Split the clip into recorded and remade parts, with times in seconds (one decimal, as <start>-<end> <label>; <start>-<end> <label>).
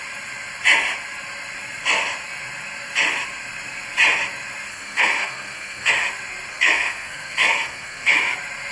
0.0-4.7 recorded; 4.7-5.9 remade; 5.9-6.5 recorded; 6.5-8.1 remade; 8.1-8.7 recorded